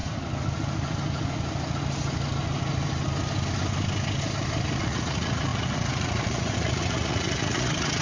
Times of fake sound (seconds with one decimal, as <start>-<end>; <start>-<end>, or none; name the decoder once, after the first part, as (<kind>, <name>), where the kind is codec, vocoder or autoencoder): 4.8-8.0 (vocoder, Vocos)